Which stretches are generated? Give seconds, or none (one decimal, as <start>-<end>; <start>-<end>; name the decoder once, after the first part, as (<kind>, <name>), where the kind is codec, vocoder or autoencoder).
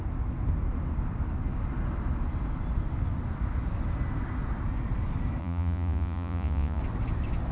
5.4-6.8 (vocoder, Vocos)